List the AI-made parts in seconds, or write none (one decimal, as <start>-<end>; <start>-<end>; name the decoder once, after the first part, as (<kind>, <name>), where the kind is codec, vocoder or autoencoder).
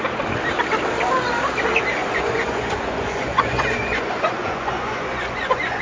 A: 2.0-5.8 (vocoder, Vocos)